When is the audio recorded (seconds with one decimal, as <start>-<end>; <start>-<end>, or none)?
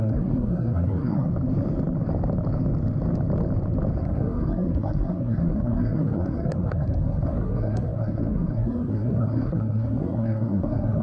1.3-4.0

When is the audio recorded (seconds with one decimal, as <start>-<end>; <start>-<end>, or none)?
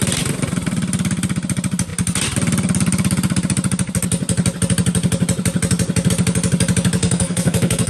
0.0-7.0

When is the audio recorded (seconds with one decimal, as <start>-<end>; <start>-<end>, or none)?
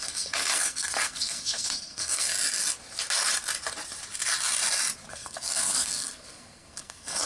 2.3-5.1